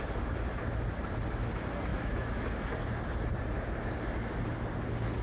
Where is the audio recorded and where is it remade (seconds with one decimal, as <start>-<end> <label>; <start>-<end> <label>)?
0.0-1.9 recorded; 1.9-2.5 remade; 2.5-5.2 recorded

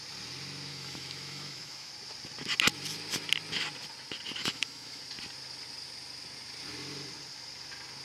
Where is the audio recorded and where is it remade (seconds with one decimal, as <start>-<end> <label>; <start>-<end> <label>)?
0.0-0.7 recorded; 0.7-1.9 remade; 1.9-4.4 recorded; 4.4-5.0 remade; 5.0-8.0 recorded